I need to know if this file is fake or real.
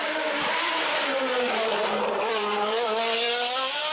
fake